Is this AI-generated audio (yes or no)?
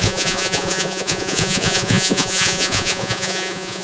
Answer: yes